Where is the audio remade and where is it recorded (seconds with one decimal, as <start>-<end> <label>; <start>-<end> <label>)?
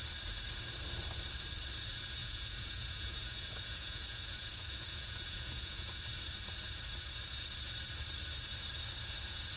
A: 0.0-2.2 recorded; 2.2-6.0 remade; 6.0-9.6 recorded